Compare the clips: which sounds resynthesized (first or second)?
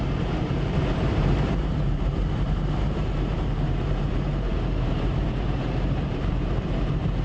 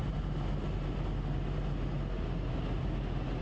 first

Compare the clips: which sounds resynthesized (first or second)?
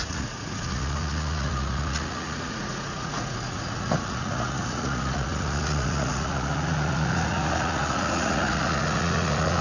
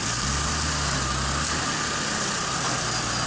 first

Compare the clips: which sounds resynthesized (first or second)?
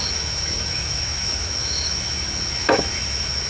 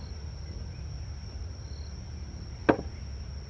first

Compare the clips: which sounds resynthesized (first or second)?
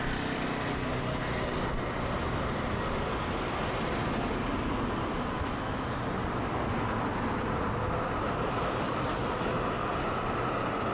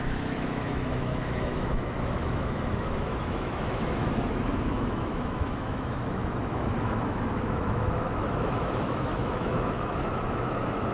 second